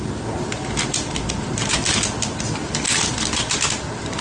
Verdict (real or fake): real